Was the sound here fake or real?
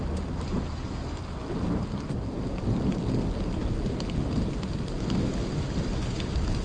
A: real